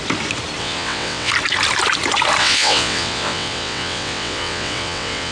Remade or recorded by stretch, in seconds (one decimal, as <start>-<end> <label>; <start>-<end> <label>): 0.0-0.6 recorded; 0.6-1.3 remade; 1.3-2.4 recorded; 2.4-5.3 remade